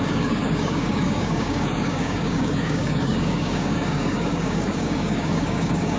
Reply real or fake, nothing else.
fake